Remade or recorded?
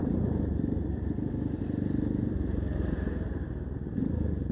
recorded